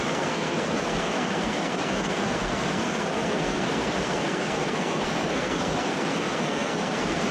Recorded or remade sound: remade